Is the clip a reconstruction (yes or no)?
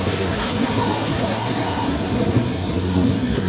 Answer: yes